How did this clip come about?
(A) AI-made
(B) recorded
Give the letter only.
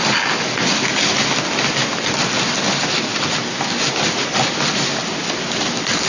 B